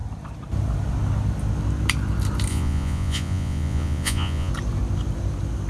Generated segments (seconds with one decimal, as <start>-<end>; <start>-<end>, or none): 2.5-4.5